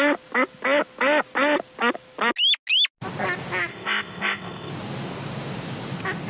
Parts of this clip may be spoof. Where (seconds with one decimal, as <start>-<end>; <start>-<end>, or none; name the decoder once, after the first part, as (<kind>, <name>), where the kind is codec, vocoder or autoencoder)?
3.7-4.7 (codec, ZipCodec)